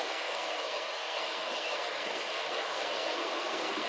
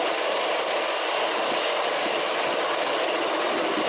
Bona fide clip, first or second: second